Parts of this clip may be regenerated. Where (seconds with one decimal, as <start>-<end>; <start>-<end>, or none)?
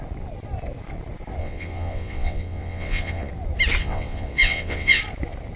1.4-3.3; 3.8-5.0